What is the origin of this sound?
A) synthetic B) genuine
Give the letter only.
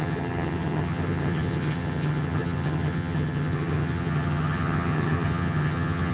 A